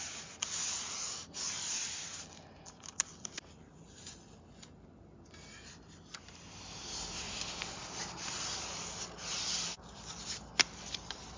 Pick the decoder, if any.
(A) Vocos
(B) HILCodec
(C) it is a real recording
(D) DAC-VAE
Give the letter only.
C